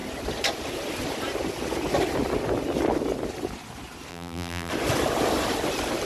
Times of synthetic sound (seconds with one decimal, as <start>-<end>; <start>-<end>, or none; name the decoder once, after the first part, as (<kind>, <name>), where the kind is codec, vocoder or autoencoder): 4.1-4.7 (vocoder, BigVGAN v2)